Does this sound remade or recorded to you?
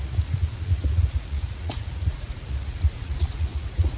remade